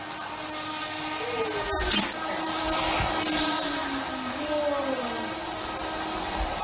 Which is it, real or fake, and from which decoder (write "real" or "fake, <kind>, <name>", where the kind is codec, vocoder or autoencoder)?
real